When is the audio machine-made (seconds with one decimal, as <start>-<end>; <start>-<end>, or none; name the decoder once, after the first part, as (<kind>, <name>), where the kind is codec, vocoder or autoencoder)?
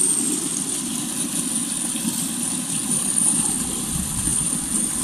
none